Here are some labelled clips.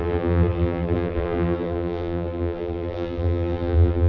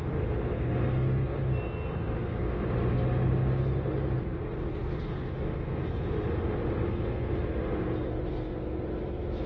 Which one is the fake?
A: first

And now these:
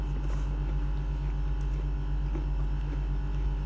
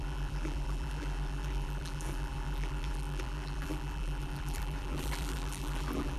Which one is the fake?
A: second